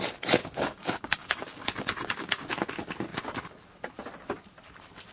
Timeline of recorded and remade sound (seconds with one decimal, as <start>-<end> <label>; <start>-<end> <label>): 0.0-0.4 recorded; 0.4-2.5 remade; 2.5-5.1 recorded

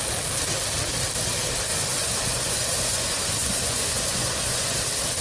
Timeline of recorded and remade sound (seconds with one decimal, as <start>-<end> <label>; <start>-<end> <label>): 0.0-1.7 recorded; 1.7-4.8 remade; 4.8-5.2 recorded

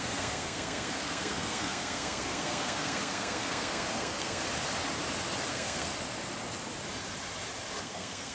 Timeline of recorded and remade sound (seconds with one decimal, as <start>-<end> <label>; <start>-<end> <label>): 0.0-4.4 remade; 4.4-5.5 recorded; 5.5-5.9 remade; 5.9-7.8 recorded; 7.8-8.3 remade

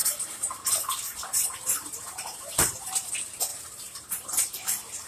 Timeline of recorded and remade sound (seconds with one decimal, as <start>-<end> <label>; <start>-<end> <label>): 0.0-3.1 remade; 3.1-3.5 recorded; 3.5-4.3 remade; 4.3-5.1 recorded

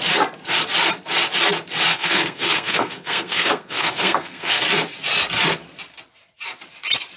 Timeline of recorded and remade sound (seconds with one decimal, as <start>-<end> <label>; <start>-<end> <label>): 0.0-1.9 recorded; 1.9-4.6 remade; 4.6-7.2 recorded

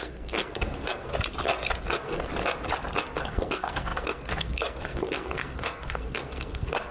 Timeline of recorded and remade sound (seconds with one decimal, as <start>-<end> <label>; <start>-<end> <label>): 0.0-1.1 remade; 1.1-1.8 recorded; 1.8-2.3 remade; 2.3-3.2 recorded; 3.2-6.9 remade

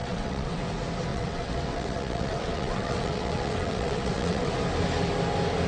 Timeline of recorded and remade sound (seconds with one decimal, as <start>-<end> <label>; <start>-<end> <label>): 0.0-0.6 remade; 0.6-1.1 recorded; 1.1-4.5 remade; 4.5-5.7 recorded

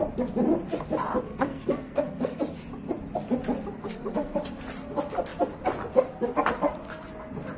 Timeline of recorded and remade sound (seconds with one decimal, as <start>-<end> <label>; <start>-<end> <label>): 0.0-1.3 recorded; 1.3-2.4 remade; 2.4-3.8 recorded; 3.8-4.4 remade; 4.4-7.6 recorded